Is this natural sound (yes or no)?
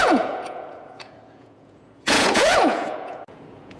no